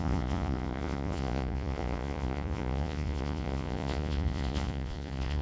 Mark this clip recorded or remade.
remade